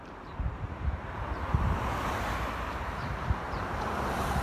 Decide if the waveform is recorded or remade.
remade